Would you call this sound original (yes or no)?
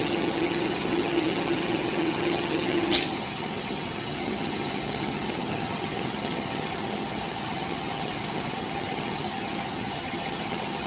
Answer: no